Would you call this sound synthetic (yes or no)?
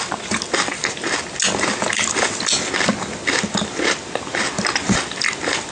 no